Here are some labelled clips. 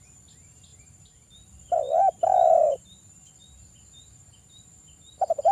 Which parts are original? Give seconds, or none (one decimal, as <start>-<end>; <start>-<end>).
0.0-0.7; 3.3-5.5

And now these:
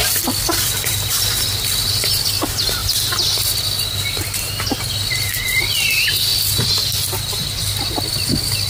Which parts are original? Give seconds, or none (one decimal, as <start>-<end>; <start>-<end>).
0.0-8.7

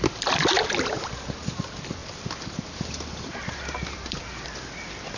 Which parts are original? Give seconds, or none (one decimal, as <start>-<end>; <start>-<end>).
0.0-2.0; 4.2-5.2

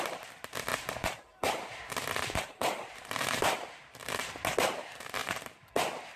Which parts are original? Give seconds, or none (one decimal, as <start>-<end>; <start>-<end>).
0.0-0.7; 4.4-5.2; 5.7-6.2

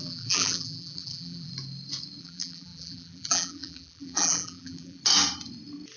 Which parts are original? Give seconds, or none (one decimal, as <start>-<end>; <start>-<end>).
1.5-2.2; 5.0-6.0

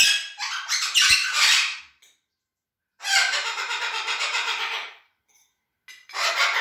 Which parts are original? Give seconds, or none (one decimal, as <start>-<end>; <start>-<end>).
0.0-1.2; 1.8-3.2; 5.1-6.6

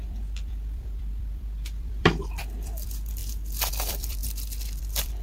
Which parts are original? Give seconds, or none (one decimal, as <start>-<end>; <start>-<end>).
3.2-3.7; 4.2-4.8